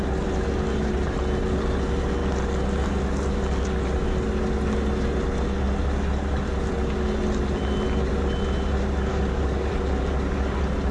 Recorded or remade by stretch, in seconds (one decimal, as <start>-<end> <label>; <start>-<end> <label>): 0.0-9.1 recorded; 9.1-9.7 remade; 9.7-10.9 recorded